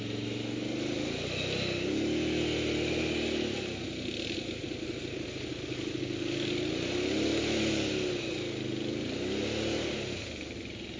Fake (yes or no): no